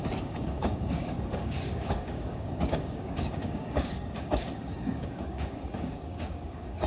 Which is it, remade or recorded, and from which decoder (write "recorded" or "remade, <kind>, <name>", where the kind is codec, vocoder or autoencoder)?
remade, codec, DAC